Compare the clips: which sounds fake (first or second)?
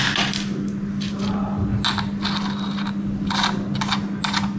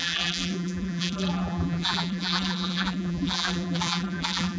second